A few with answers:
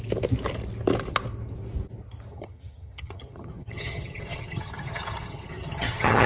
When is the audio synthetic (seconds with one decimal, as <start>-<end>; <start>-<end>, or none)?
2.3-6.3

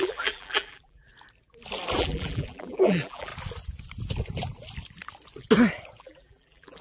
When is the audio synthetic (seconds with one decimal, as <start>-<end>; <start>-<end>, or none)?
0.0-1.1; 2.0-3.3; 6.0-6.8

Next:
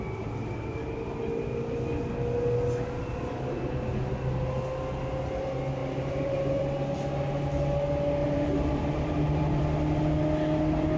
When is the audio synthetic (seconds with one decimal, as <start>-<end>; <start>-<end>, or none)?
5.8-6.6; 8.2-9.6